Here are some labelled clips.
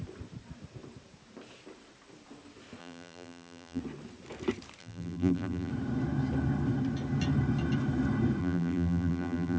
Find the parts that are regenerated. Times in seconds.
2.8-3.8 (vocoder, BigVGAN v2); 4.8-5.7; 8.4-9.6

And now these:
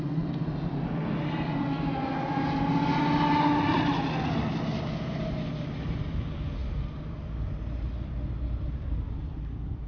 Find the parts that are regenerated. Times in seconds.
none